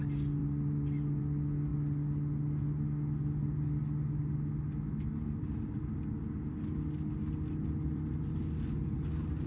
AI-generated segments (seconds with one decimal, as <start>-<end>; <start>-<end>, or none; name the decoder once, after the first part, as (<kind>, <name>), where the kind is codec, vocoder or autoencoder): none